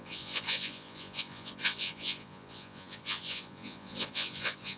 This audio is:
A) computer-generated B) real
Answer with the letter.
A